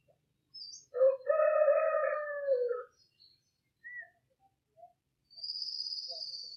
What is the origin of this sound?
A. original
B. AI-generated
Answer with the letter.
A